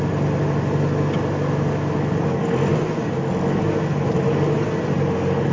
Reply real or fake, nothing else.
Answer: real